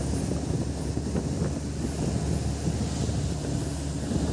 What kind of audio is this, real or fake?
real